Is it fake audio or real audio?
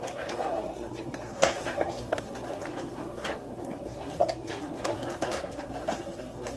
fake